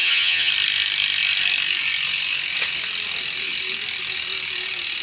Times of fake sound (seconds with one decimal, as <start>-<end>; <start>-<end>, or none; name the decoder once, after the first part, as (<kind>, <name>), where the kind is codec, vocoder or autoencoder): 0.0-0.5 (vocoder, HiFi-GAN)